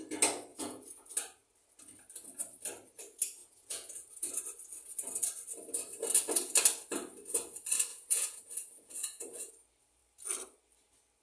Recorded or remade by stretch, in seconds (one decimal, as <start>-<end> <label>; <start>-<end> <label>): 0.0-0.5 recorded; 0.5-1.1 remade; 1.1-3.4 recorded; 3.4-4.3 remade; 4.3-7.9 recorded; 7.9-9.5 remade; 9.5-11.2 recorded